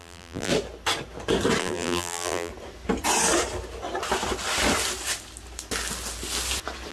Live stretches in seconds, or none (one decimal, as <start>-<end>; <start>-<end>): 0.5-1.6; 2.5-6.9